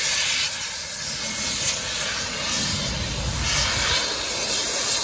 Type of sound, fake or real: real